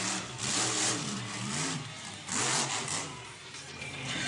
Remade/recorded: remade